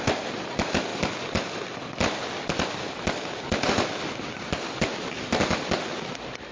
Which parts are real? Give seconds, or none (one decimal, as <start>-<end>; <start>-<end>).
0.0-6.5